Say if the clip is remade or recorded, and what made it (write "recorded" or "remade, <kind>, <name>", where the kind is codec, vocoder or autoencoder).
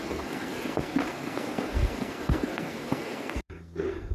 remade, codec, SNAC